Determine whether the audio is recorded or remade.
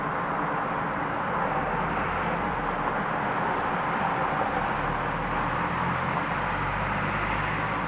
recorded